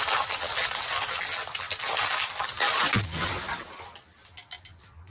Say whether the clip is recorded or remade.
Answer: recorded